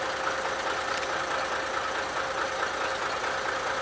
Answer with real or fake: real